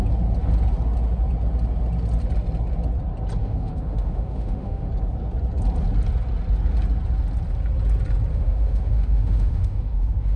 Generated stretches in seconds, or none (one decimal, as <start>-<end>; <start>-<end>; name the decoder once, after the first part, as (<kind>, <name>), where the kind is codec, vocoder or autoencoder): 3.4-4.9 (autoencoder, DAC-VAE); 8.3-10.4